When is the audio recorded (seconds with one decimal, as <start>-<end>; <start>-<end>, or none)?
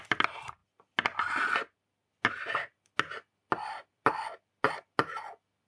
0.0-5.7